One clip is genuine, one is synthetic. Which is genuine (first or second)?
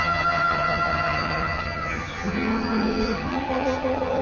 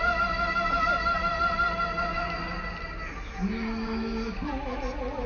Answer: second